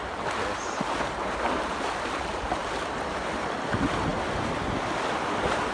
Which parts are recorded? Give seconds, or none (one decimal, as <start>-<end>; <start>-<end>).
0.0-5.7